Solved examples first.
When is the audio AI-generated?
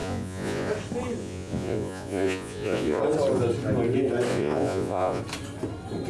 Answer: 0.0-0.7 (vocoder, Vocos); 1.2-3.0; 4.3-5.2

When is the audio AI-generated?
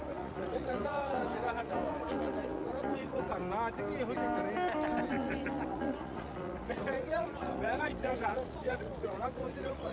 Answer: 0.0-3.4 (vocoder, Vocos); 5.1-9.9